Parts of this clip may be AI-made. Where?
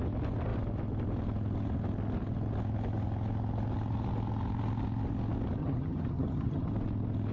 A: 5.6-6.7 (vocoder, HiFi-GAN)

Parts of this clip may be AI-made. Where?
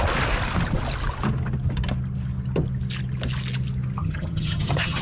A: 4.0-5.0 (vocoder, HiFi-GAN)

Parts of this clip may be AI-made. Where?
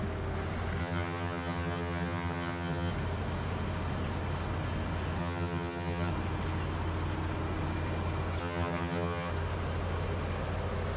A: 0.8-2.9 (vocoder, HiFi-GAN); 5.2-6.1; 8.4-9.3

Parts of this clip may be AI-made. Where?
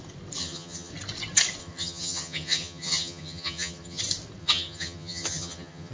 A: 0.4-0.9 (vocoder, HiFi-GAN); 1.6-4.0; 4.4-5.9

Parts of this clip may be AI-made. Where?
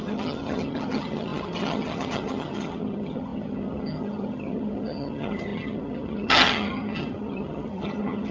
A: 0.0-8.3 (vocoder, HiFi-GAN)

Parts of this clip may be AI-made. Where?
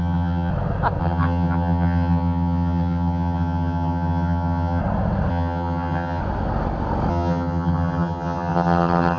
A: 0.0-0.5 (vocoder, HiFi-GAN); 1.0-4.8; 5.3-6.2; 7.1-9.2